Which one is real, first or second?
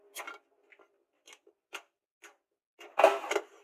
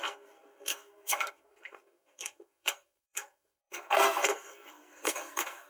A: first